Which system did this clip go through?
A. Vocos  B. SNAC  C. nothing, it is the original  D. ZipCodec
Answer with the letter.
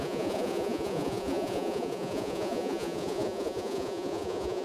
A